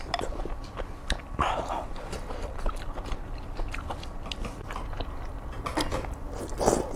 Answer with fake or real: real